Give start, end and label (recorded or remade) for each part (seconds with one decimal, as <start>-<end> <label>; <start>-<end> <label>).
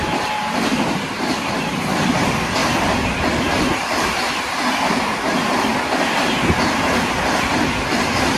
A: 0.0-2.6 remade; 2.6-7.6 recorded; 7.6-8.4 remade